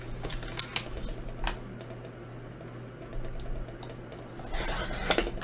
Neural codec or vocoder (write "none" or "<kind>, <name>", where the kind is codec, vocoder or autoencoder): none